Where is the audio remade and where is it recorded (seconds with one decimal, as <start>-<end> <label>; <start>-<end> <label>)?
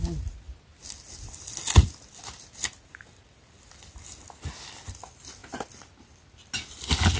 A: 0.0-7.2 recorded